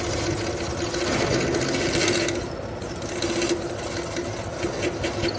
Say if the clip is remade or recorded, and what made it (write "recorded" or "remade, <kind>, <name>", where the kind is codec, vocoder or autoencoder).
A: recorded